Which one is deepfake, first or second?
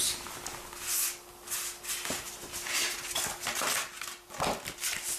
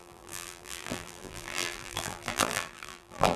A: second